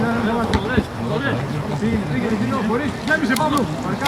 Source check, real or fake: real